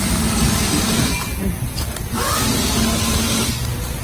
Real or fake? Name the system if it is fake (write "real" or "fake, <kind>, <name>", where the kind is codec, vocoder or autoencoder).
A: real